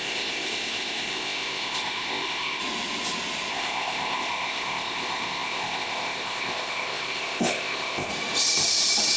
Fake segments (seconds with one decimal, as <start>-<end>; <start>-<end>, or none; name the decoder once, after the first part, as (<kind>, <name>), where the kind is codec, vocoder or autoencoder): 0.0-2.6 (codec, ZipCodec); 3.5-8.1